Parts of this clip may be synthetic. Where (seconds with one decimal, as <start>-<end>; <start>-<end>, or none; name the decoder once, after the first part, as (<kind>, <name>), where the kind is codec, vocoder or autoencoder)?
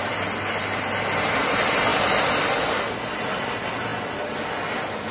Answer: none